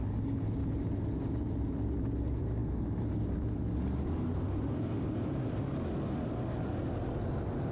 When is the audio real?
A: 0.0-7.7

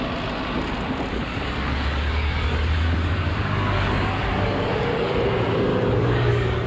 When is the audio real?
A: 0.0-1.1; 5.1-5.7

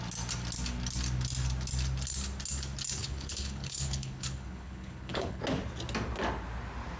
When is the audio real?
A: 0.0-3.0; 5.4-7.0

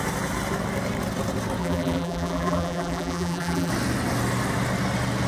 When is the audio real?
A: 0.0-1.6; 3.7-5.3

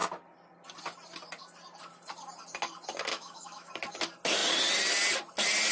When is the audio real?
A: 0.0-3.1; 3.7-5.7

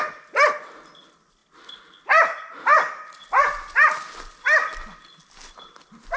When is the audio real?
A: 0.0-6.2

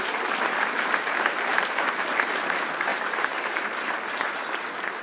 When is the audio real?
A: 0.0-1.5; 2.3-2.9; 3.7-5.0

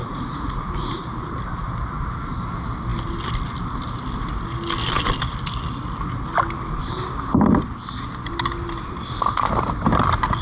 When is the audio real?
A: 1.0-10.4